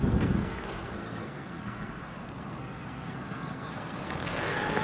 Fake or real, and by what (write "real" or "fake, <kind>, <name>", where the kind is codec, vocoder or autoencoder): fake, codec, SNAC